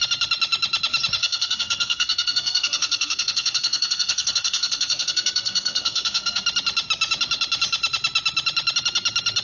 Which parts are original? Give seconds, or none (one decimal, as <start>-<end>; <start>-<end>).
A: 0.0-1.2; 6.4-9.4